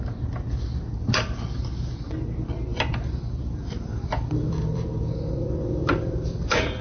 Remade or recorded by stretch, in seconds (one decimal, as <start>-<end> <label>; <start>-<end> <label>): 0.0-2.7 recorded; 2.7-6.8 remade